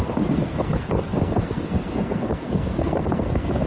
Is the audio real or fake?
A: fake